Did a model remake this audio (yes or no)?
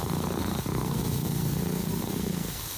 yes